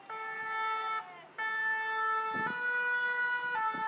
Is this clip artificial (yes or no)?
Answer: no